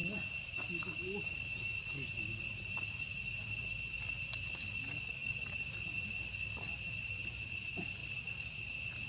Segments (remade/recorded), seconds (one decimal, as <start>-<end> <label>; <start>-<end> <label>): 0.0-9.1 recorded